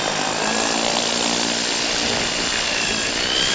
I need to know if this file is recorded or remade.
recorded